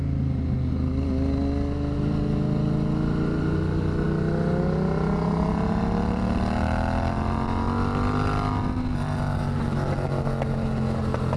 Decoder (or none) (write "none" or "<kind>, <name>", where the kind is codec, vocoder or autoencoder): none